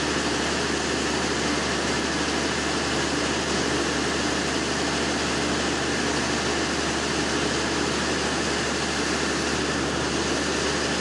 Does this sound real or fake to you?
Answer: real